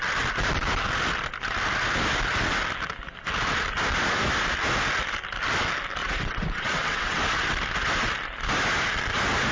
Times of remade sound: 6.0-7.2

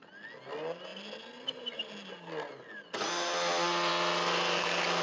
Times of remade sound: none

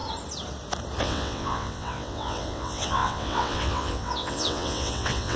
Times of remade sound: 1.0-5.4

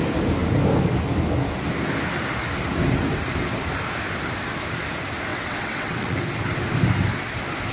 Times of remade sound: 5.3-6.2

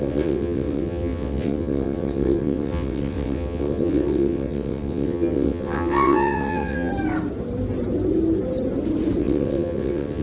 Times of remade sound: 0.0-6.9; 9.2-10.2

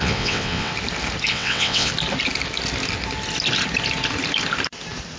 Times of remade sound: 0.0-0.7; 1.3-1.9

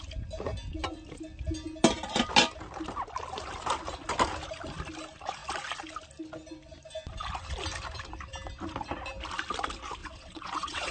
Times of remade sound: 10.0-10.9

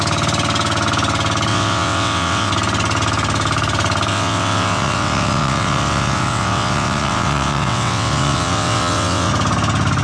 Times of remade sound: 1.5-2.5; 4.1-9.3